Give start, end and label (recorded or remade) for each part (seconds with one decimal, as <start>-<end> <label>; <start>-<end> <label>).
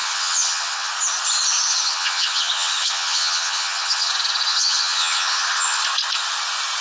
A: 0.0-0.9 remade; 0.9-1.7 recorded; 1.7-4.1 remade; 4.1-4.5 recorded; 4.5-5.8 remade; 5.8-6.8 recorded